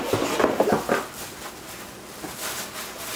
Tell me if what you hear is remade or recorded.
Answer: recorded